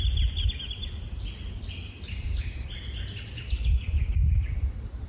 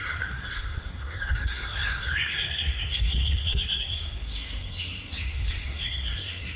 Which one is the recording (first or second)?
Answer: first